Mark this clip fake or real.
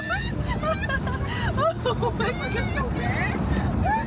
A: real